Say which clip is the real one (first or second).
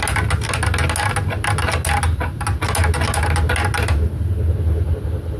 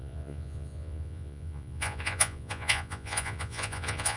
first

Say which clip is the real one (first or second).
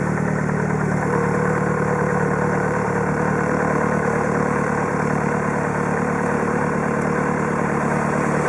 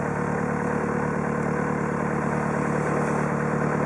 second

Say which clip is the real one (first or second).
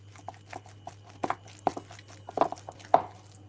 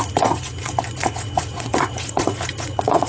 first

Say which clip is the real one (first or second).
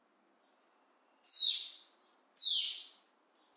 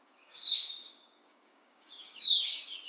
first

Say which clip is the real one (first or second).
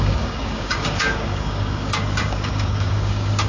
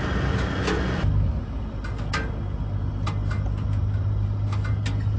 second